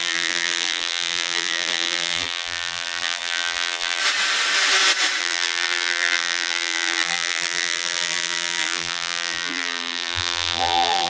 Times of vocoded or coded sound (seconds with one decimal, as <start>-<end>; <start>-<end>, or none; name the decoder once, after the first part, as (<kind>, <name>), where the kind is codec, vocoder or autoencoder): 0.0-4.0 (vocoder, BigVGAN v2); 5.2-11.1